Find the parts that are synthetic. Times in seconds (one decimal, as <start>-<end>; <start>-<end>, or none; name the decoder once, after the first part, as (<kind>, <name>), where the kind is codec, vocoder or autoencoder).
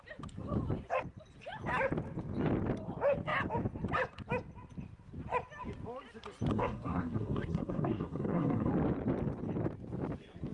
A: 6.5-8.7 (codec, SNAC)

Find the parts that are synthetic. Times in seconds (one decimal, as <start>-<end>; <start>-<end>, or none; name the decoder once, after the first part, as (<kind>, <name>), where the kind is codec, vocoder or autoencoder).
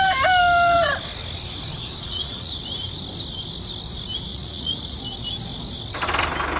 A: 2.0-2.6 (vocoder, Vocos); 4.3-5.0